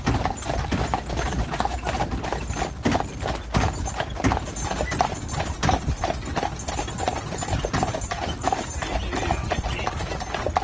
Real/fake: real